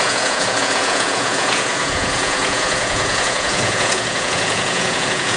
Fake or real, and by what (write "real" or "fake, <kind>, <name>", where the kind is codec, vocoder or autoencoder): fake, vocoder, Vocos